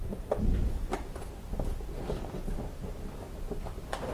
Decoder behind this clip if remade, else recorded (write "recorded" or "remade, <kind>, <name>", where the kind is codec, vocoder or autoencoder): recorded